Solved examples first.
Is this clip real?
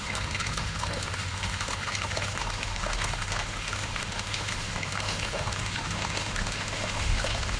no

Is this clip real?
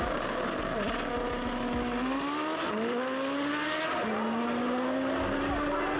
yes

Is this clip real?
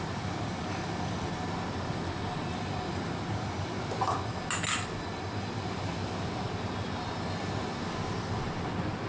yes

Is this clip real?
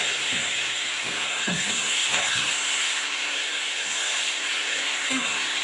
no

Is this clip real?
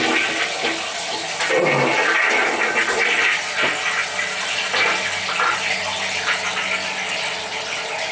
yes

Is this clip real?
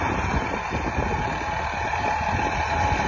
yes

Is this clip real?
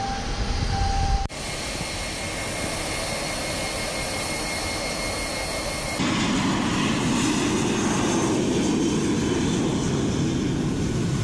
yes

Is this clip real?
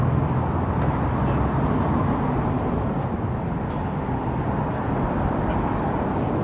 yes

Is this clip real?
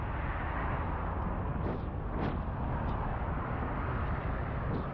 yes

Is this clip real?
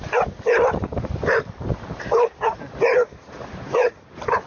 no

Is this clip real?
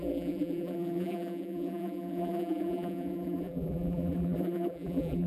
no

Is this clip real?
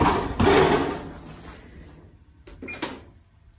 yes